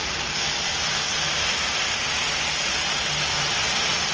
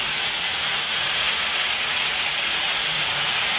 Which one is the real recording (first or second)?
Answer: first